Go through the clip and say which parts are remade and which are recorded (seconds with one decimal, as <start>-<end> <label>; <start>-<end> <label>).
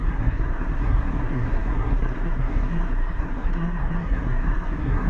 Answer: 0.0-5.1 remade